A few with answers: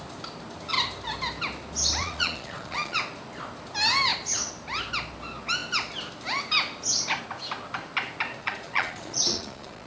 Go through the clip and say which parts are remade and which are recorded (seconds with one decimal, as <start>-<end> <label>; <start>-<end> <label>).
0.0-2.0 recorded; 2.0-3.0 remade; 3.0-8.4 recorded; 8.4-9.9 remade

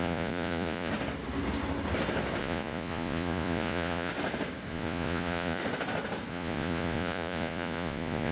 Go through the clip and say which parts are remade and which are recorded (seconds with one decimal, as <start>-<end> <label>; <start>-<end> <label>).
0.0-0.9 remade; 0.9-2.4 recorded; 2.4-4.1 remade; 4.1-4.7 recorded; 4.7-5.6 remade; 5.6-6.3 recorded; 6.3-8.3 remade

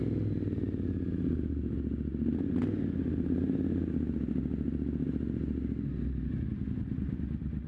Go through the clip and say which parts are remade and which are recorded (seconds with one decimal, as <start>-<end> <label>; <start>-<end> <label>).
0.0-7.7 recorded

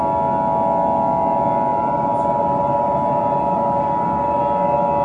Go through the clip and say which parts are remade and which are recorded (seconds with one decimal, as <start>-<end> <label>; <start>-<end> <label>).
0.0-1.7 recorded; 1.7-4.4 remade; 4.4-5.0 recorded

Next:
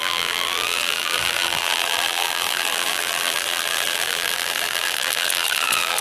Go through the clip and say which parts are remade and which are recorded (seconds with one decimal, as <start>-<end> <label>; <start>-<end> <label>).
0.0-6.0 remade